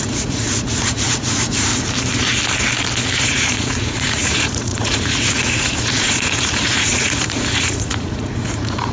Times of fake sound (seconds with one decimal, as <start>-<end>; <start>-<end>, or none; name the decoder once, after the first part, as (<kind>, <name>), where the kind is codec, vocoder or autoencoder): 0.0-1.7 (vocoder, Vocos); 3.2-8.9